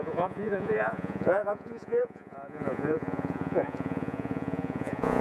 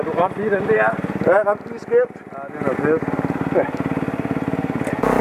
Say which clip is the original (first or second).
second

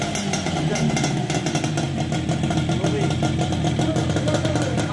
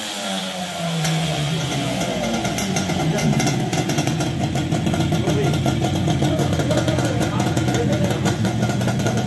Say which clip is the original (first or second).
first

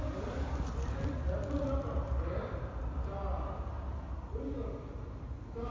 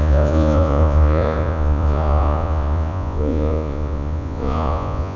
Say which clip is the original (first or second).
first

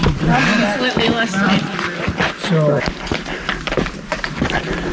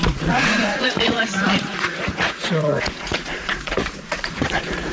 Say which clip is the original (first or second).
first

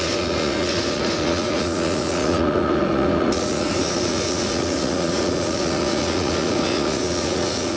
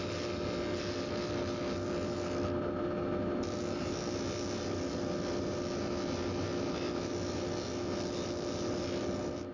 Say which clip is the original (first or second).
second